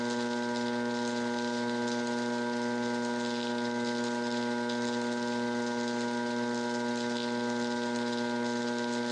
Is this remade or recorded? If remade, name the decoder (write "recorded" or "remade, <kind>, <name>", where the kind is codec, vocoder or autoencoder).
recorded